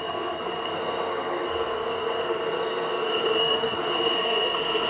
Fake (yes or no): yes